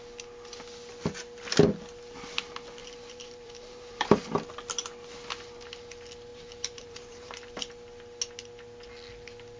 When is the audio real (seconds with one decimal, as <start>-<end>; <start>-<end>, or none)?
0.0-2.8; 4.3-6.3; 7.7-9.6